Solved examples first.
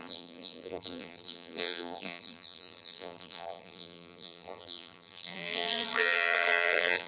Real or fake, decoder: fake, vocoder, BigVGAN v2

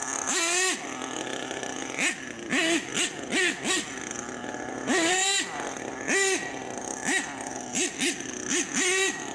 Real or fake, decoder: real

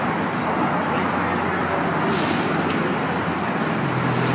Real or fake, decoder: real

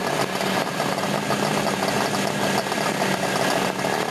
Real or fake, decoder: real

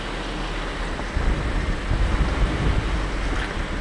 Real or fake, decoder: real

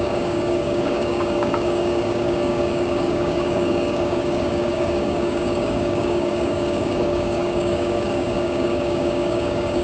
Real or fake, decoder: fake, codec, DAC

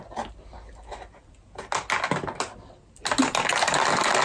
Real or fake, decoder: real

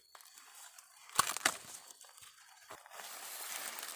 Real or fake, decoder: real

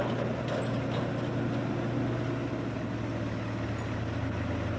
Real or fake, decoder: real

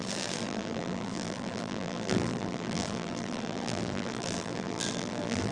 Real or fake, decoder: fake, vocoder, BigVGAN v2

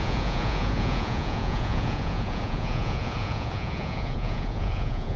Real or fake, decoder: fake, vocoder, Vocos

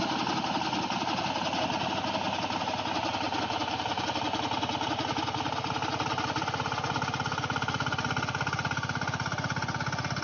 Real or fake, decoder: real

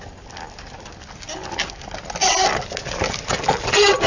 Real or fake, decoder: real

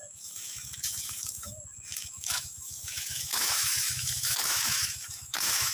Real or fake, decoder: fake, autoencoder, DAC-VAE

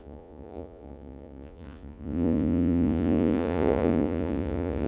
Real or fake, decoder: fake, vocoder, Vocos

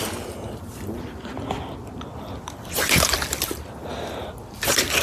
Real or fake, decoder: real